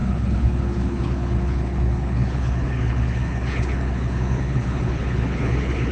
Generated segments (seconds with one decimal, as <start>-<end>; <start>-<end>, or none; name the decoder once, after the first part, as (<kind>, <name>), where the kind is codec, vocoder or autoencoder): 0.0-5.9 (codec, HILCodec)